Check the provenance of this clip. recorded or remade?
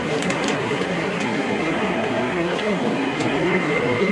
remade